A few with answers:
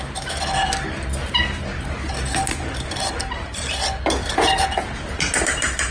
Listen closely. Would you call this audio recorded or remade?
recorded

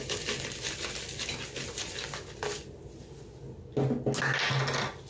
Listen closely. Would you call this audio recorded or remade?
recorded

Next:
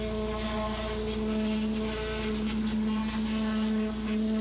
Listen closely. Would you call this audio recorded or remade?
recorded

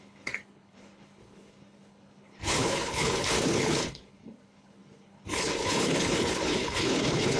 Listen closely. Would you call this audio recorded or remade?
remade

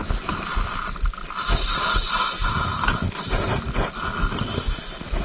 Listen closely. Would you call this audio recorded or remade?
recorded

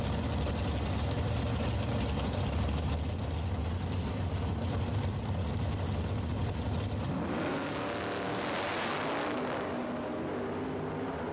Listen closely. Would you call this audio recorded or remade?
recorded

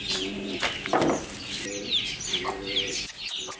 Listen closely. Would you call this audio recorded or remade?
recorded